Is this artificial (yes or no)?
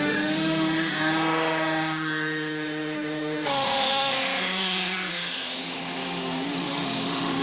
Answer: yes